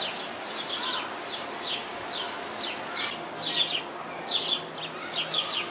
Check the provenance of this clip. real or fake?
real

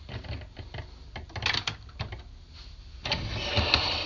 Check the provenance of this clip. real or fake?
real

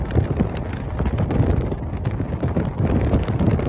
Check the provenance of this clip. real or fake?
real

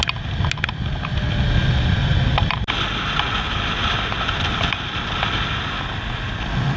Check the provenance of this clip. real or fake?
real